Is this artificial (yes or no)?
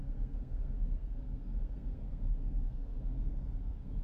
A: yes